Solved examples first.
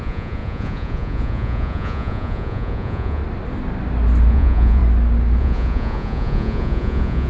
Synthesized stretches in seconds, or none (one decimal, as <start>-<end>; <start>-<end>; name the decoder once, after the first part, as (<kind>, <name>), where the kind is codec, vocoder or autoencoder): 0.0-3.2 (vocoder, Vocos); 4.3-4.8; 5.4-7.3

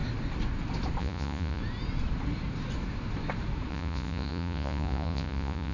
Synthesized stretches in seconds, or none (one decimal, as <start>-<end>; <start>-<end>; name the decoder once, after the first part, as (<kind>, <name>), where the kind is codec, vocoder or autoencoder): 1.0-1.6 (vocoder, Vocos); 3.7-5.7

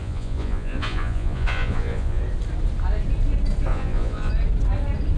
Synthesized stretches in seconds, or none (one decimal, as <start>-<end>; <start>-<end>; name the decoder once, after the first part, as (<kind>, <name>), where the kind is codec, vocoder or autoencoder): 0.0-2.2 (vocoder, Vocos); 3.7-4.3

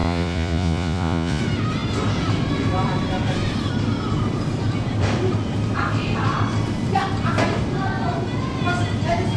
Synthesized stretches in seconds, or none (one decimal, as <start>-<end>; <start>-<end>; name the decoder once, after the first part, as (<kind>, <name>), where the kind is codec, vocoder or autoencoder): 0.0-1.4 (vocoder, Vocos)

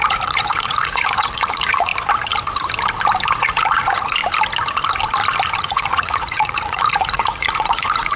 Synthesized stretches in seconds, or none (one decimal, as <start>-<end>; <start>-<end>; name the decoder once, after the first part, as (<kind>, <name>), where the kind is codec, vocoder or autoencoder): 0.0-1.9 (vocoder, Vocos); 3.4-4.2; 5.6-8.2

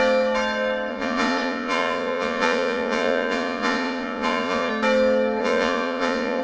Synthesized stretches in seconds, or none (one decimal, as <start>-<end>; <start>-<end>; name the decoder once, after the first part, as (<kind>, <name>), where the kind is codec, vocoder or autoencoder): 0.9-4.7 (vocoder, Vocos); 5.4-6.4

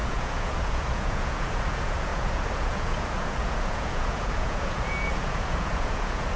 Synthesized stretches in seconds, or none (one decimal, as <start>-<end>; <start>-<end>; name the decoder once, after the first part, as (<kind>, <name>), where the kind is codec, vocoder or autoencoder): 0.0-6.4 (vocoder, Vocos)

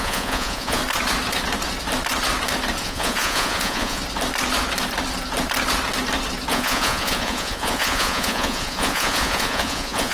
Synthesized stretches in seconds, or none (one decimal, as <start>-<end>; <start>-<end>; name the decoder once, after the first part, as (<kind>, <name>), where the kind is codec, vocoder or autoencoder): 0.0-0.8 (vocoder, Vocos); 2.8-4.0; 6.5-10.1